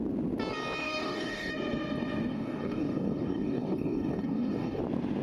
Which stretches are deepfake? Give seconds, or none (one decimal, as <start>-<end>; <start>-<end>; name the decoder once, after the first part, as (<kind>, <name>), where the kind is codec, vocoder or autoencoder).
0.8-1.5 (codec, DAC); 2.3-4.8